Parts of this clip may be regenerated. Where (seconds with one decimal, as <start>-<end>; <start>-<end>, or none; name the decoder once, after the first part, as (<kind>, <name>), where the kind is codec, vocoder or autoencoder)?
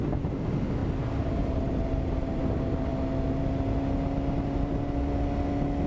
0.8-2.5 (vocoder, BigVGAN v2)